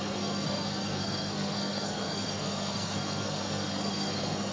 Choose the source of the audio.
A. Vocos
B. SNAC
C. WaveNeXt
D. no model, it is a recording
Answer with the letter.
B